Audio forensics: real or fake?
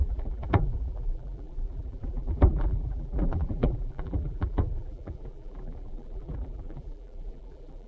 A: fake